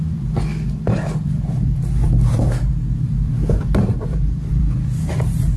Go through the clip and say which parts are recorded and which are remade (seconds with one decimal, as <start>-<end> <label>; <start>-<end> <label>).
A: 0.0-5.6 remade